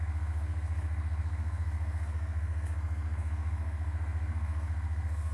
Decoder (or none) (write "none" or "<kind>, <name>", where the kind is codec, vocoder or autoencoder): codec, SNAC